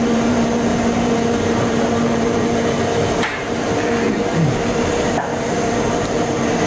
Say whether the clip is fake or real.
fake